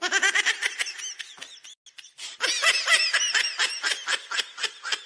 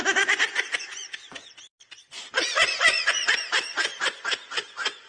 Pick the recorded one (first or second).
first